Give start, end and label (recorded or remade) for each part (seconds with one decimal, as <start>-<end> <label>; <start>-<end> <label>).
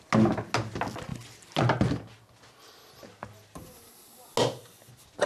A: 0.0-5.3 recorded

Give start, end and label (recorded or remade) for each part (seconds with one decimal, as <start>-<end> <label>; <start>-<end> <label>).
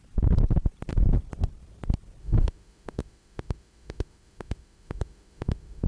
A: 0.0-2.2 recorded; 2.2-5.9 remade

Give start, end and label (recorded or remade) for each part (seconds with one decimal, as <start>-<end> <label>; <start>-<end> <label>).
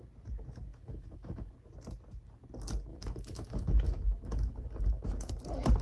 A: 0.0-0.7 recorded; 0.7-1.5 remade; 1.5-2.9 recorded; 2.9-5.3 remade; 5.3-5.8 recorded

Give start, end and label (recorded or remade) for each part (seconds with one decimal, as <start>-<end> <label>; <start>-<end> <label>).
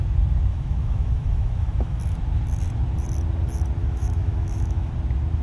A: 0.0-0.5 recorded; 0.5-2.0 remade; 2.0-3.8 recorded; 3.8-4.9 remade; 4.9-5.4 recorded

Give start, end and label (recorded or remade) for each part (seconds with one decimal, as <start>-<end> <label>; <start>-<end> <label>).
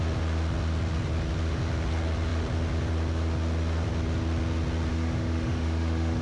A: 0.0-4.9 recorded; 4.9-6.2 remade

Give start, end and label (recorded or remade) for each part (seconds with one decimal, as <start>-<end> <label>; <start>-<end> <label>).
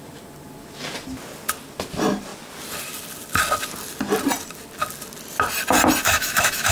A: 0.0-6.0 recorded; 6.0-6.7 remade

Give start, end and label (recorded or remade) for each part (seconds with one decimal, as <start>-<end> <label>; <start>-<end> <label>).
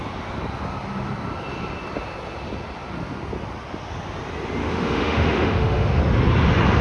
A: 0.0-4.6 recorded; 4.6-6.0 remade; 6.0-6.8 recorded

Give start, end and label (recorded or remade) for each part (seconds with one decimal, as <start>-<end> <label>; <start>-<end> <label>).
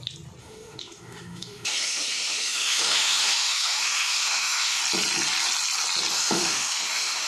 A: 0.0-0.4 recorded; 0.4-4.8 remade; 4.8-6.1 recorded; 6.1-7.3 remade